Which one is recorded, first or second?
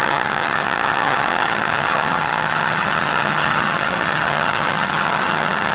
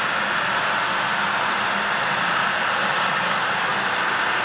second